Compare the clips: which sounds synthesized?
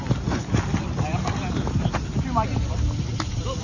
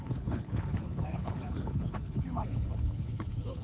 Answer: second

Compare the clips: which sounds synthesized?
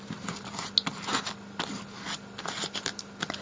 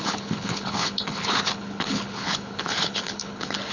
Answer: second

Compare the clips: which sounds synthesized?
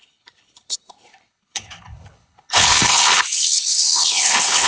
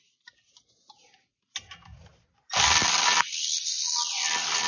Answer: first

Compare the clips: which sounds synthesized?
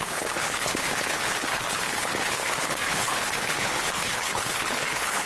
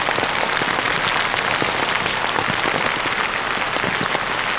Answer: first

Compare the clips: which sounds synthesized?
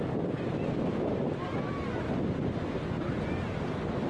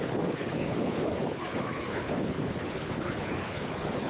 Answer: second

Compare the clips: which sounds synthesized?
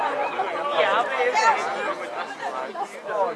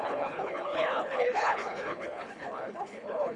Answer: second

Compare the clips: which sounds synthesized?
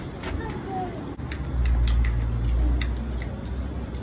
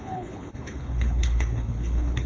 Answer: second